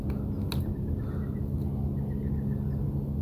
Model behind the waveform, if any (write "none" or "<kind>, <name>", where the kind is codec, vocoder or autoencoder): none